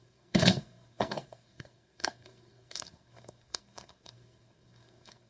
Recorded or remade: remade